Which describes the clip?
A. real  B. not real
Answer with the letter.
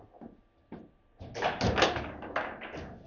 A